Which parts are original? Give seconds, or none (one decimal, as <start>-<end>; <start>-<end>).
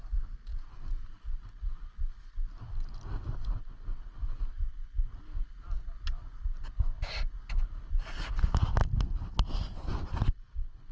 0.0-10.9